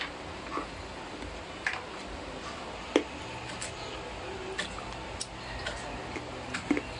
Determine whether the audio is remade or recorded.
recorded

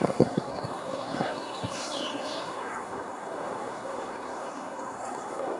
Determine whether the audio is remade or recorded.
remade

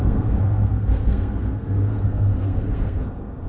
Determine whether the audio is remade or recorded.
remade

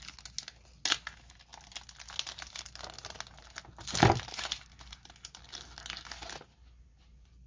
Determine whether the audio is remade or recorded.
recorded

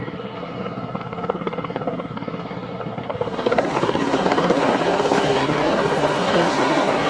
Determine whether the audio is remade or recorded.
remade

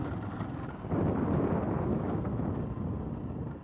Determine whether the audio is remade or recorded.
recorded